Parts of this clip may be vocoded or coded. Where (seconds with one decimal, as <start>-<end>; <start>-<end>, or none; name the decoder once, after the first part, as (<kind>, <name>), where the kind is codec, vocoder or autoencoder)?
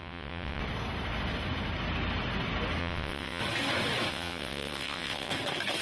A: 0.0-0.6 (vocoder, WaveNeXt); 2.8-3.4; 4.1-5.3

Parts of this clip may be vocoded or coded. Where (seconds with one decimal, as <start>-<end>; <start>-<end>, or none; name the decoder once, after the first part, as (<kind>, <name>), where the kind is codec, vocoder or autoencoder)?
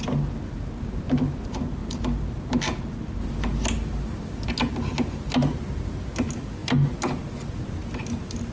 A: none